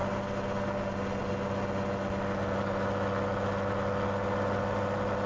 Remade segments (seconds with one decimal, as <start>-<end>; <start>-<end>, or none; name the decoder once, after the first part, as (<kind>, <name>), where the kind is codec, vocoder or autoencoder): none